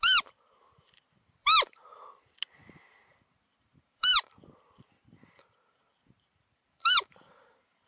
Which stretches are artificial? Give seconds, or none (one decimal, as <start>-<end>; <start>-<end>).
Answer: 0.0-1.8; 3.1-7.9